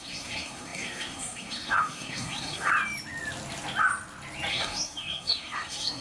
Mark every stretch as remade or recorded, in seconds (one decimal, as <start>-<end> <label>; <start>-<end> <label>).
0.0-2.7 remade; 2.7-4.5 recorded; 4.5-6.0 remade